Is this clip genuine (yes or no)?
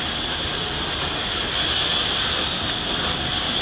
yes